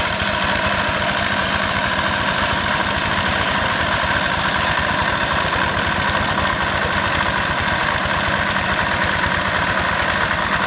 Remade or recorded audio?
recorded